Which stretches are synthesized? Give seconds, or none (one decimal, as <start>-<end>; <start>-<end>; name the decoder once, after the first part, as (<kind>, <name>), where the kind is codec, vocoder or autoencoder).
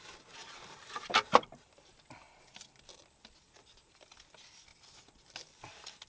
0.4-1.8 (vocoder, BigVGAN v2)